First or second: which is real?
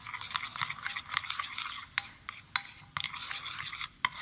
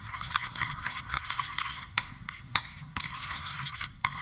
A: first